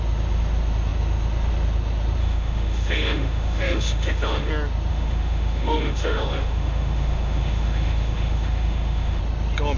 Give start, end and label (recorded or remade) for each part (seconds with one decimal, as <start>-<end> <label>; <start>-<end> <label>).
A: 0.0-2.2 recorded; 2.2-4.5 remade; 4.5-4.9 recorded; 4.9-9.2 remade; 9.2-9.8 recorded